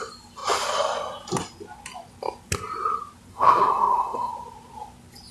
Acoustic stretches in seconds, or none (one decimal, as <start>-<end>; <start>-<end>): 0.0-3.3; 4.3-5.3

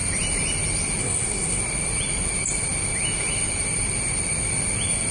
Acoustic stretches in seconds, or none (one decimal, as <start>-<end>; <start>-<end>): 0.0-1.0; 1.6-5.1